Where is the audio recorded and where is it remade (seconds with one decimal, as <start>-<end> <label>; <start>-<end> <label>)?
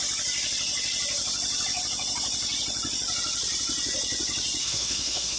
0.0-4.6 recorded; 4.6-5.4 remade